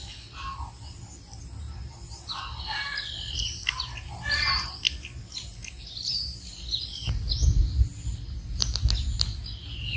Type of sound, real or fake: real